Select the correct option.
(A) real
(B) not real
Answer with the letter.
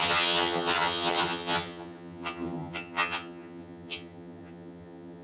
B